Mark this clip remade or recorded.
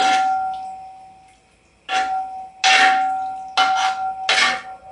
recorded